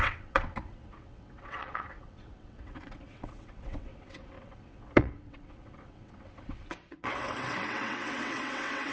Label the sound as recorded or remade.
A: remade